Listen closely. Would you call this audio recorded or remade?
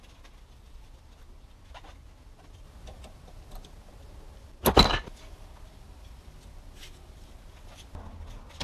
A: recorded